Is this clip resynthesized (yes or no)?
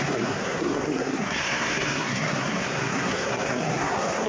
yes